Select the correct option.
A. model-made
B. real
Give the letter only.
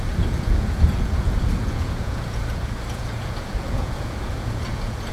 A